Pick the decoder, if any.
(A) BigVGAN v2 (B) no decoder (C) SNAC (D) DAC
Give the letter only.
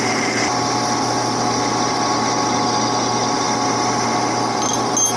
B